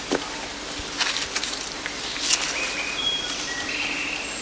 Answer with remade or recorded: recorded